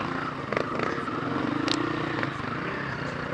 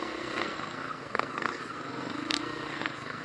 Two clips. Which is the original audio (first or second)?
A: first